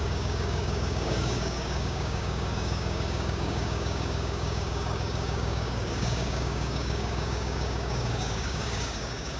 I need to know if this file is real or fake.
fake